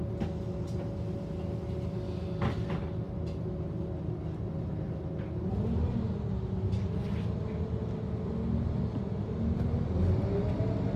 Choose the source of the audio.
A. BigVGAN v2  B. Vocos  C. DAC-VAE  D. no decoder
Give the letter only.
D